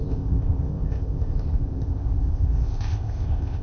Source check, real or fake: fake